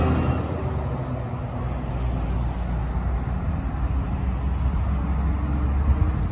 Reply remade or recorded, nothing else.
recorded